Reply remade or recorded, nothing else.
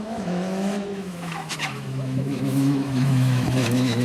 remade